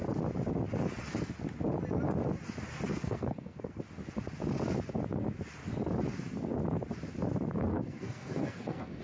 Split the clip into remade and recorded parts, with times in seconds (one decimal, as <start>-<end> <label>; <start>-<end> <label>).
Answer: 0.0-2.9 recorded; 2.9-3.8 remade; 3.8-7.7 recorded; 7.7-9.0 remade